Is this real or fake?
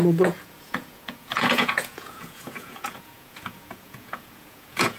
fake